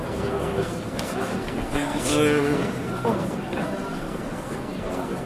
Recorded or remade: remade